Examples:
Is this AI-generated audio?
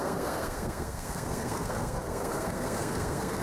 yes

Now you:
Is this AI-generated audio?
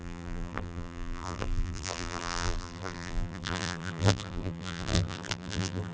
yes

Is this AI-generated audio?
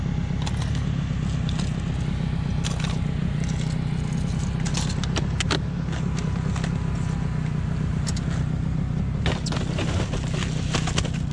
no